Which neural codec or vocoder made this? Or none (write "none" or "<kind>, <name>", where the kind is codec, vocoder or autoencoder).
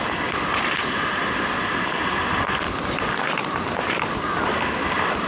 none